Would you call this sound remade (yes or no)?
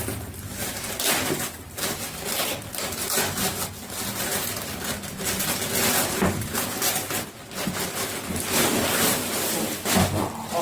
no